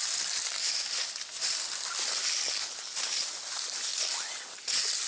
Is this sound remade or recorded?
recorded